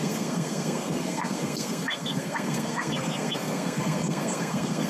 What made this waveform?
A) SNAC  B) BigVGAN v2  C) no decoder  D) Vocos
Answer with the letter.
A